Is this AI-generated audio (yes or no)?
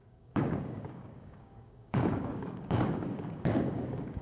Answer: yes